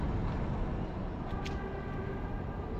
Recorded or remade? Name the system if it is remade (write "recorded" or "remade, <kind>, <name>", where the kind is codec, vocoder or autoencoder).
recorded